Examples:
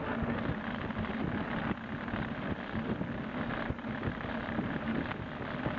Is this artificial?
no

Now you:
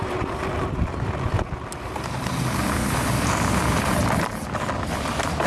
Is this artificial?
yes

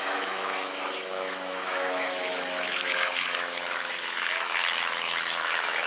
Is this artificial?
yes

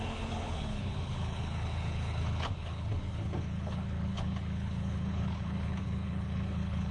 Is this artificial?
yes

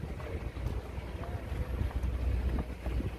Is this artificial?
no